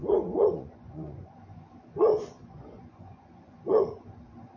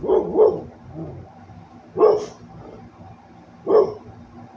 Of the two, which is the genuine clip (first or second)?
second